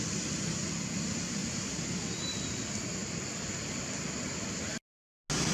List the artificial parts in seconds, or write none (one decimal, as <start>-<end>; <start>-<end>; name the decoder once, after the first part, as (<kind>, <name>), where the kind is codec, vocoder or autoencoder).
1.4-2.4 (vocoder, BigVGAN v2); 3.0-3.8